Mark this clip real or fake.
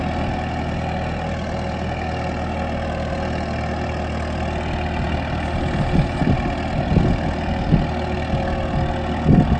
real